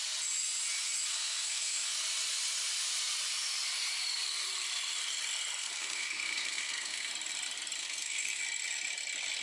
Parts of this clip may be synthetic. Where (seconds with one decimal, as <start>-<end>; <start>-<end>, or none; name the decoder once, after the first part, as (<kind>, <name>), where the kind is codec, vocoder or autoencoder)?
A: 1.1-1.9 (codec, SNAC); 5.6-7.1; 7.8-8.4